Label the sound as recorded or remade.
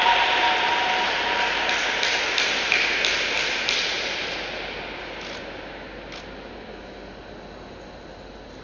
recorded